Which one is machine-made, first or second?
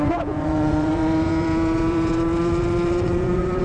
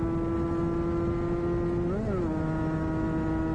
first